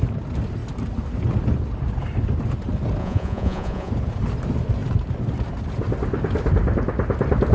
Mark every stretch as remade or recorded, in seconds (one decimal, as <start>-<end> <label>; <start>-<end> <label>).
0.0-3.0 recorded; 3.0-3.9 remade; 3.9-7.5 recorded